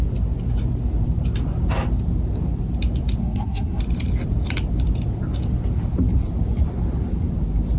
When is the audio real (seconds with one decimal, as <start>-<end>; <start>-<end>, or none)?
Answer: 0.0-3.2; 3.8-7.8

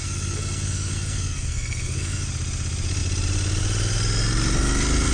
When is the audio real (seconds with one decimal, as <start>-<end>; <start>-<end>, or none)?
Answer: 2.2-5.1